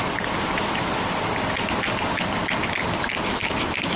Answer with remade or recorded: recorded